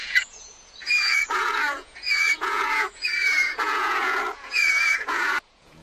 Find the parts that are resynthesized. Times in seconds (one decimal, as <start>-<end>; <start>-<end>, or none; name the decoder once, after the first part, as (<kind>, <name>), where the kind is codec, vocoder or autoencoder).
0.0-5.8 (vocoder, Vocos)